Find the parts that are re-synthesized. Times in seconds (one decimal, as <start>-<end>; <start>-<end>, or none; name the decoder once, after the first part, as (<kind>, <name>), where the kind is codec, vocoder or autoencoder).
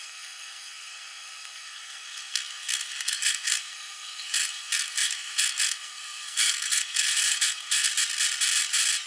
0.0-7.9 (codec, SNAC)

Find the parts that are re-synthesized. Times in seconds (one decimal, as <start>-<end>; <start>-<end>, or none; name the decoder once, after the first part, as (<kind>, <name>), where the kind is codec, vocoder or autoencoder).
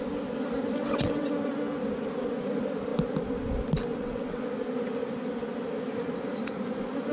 0.8-1.3 (vocoder, WaveNeXt); 3.9-4.4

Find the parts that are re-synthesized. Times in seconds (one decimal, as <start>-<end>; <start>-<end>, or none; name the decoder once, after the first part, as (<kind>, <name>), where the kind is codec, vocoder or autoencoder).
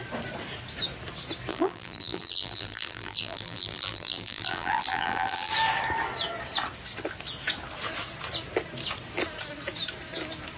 1.5-5.5 (vocoder, BigVGAN v2)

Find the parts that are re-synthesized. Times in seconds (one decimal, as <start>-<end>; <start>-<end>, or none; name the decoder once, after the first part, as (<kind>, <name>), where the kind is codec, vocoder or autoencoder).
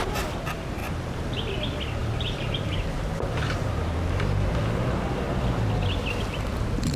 0.8-1.4 (vocoder, BigVGAN v2); 2.0-4.6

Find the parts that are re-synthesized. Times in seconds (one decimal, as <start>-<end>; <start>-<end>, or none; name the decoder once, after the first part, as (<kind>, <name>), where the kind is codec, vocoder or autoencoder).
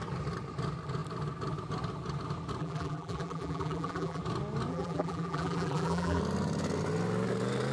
2.6-4.2 (vocoder, BigVGAN v2); 4.7-6.2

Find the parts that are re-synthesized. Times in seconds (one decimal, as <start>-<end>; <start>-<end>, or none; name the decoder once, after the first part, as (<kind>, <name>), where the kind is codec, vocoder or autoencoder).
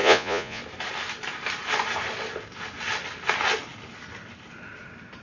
0.0-0.6 (vocoder, Vocos)